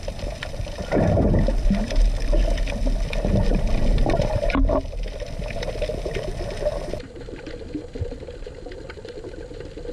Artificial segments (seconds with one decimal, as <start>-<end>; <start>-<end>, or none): 6.7-9.2